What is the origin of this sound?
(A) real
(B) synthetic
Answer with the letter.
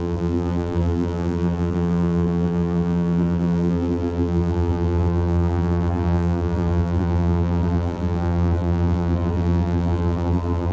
B